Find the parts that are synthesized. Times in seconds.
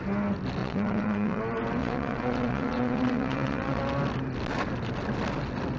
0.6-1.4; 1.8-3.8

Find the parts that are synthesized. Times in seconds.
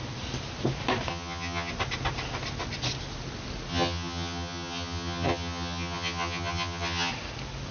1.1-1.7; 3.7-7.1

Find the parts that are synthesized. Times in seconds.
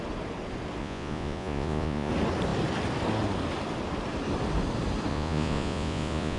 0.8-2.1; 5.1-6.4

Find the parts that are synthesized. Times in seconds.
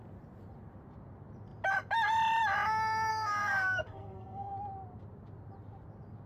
3.1-4.5